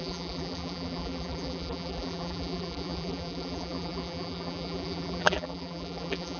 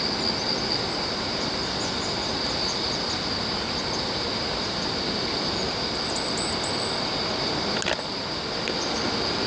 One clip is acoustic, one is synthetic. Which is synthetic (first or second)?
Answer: first